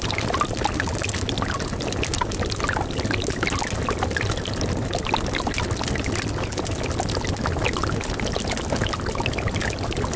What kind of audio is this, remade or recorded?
recorded